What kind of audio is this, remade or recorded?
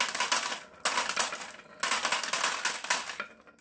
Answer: recorded